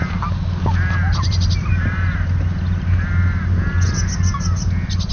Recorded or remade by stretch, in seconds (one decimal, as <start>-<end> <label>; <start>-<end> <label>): 0.0-1.1 recorded; 1.1-1.7 remade; 1.7-5.1 recorded